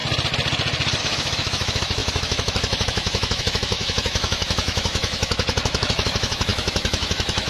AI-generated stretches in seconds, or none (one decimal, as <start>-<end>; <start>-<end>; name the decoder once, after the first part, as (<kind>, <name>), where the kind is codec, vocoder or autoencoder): 1.0-7.5 (autoencoder, DAC-VAE)